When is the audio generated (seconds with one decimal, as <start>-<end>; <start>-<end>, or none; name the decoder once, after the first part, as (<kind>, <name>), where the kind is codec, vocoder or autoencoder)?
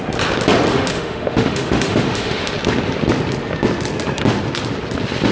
0.7-2.5 (autoencoder, DAC-VAE)